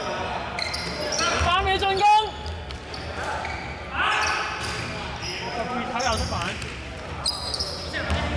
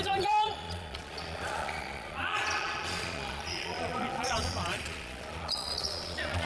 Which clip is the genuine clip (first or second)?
first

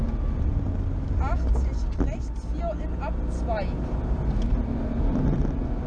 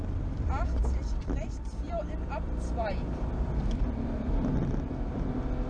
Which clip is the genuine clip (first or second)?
first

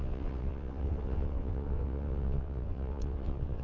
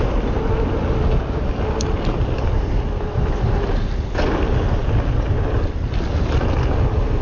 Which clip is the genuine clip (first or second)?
second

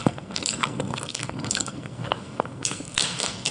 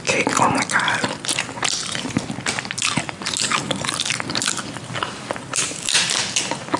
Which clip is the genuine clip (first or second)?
second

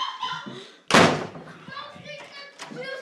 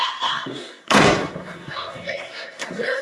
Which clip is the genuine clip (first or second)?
first